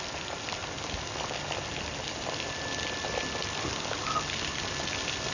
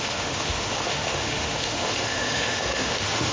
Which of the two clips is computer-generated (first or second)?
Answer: second